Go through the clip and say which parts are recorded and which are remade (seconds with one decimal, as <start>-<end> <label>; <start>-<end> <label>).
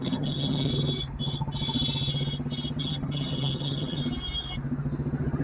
0.0-0.7 remade; 0.7-2.8 recorded; 2.8-4.0 remade; 4.0-5.4 recorded